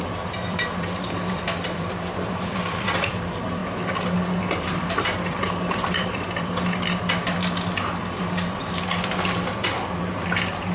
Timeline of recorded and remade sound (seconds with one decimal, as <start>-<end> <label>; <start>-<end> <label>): 0.0-3.6 remade; 3.6-4.4 recorded; 4.4-10.7 remade